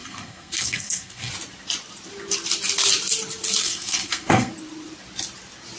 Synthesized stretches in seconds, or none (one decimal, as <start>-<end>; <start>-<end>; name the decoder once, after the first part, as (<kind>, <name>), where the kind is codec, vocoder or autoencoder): 0.0-1.3 (codec, SNAC); 3.6-4.5